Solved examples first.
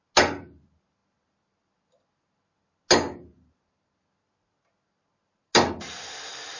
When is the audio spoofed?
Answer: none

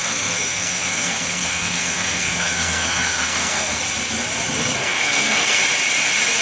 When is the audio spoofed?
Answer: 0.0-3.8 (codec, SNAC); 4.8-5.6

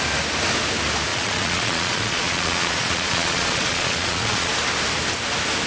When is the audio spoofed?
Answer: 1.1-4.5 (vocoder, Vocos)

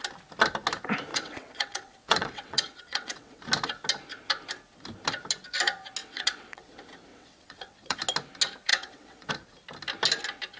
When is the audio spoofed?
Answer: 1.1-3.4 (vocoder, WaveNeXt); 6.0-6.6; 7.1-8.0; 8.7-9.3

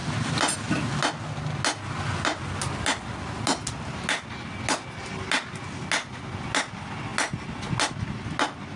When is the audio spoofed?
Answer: none